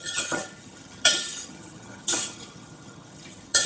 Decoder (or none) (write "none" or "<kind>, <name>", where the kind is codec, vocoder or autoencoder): vocoder, HiFi-GAN